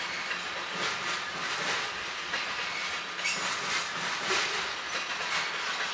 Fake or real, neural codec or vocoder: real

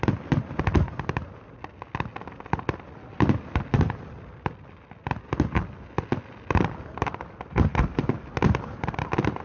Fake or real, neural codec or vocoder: real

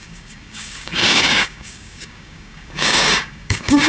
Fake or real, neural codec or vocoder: fake, codec, DAC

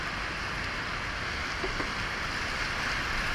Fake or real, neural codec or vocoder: real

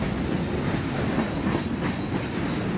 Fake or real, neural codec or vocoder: real